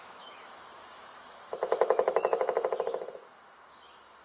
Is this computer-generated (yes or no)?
yes